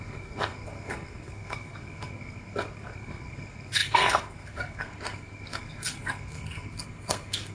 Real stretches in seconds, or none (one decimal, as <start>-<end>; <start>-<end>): none